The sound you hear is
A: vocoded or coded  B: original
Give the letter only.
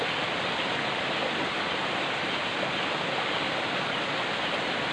B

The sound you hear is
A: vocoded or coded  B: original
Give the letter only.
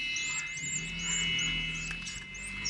B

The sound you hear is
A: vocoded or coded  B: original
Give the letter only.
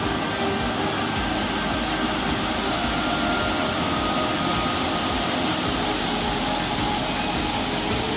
B